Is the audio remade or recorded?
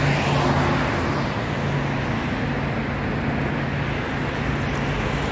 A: recorded